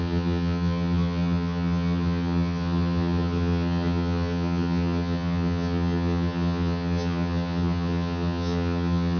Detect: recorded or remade remade